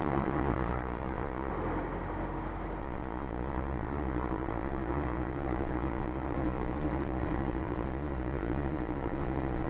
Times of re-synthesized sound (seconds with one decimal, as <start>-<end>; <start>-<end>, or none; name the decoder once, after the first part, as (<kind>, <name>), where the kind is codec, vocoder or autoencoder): 0.0-1.5 (vocoder, Vocos); 2.8-9.7